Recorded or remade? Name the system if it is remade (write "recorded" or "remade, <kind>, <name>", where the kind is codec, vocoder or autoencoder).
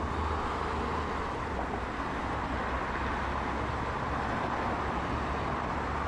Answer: recorded